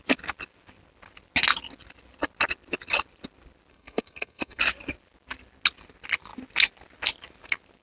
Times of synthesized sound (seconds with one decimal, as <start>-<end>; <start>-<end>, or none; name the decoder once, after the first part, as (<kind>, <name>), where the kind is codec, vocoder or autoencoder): 3.7-4.6 (codec, SNAC)